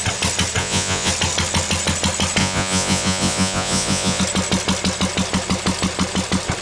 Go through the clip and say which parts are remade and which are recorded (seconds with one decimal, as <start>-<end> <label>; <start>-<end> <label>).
0.0-0.6 recorded; 0.6-1.1 remade; 1.1-2.4 recorded; 2.4-4.2 remade; 4.2-6.6 recorded